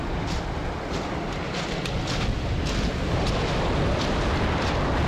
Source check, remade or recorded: recorded